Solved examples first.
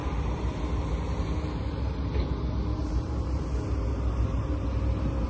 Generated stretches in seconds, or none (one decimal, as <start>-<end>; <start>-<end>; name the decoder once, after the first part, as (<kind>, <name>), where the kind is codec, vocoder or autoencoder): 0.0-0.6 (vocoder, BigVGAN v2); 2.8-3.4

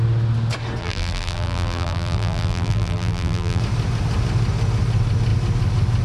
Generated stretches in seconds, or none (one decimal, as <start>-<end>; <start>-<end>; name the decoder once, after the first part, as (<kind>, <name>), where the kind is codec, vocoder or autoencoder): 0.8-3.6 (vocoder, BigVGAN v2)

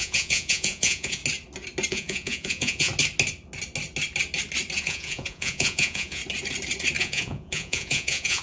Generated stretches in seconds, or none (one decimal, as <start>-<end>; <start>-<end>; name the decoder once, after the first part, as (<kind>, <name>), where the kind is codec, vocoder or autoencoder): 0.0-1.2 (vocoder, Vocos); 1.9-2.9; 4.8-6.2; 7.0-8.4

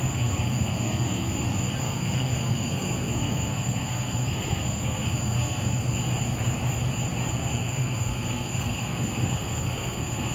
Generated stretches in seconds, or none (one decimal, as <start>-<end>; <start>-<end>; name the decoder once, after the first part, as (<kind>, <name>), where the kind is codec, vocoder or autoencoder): 0.0-1.3 (codec, SNAC); 1.8-5.8; 7.3-10.3

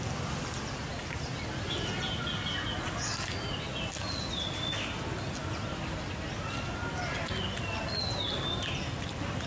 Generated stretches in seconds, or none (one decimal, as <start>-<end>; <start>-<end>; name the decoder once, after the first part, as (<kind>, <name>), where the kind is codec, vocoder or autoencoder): none

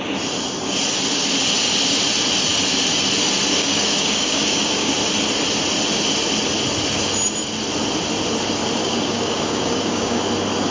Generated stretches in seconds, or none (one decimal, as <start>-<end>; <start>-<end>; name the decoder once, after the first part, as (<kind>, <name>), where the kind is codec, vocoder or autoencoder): 3.6-4.9 (codec, DAC); 8.8-10.2

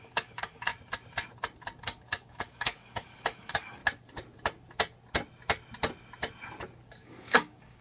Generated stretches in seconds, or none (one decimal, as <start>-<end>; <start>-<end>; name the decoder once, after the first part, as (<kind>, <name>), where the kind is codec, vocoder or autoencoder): 0.0-0.7 (codec, DAC); 1.8-3.8; 7.0-7.8